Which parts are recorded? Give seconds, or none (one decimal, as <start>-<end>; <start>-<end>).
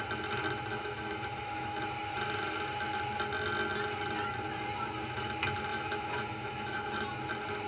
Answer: 0.0-0.7; 1.8-5.7; 6.9-7.7